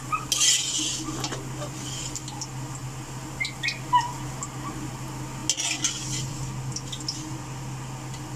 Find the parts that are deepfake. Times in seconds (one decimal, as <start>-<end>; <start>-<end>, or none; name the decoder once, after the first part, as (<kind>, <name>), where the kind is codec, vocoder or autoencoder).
none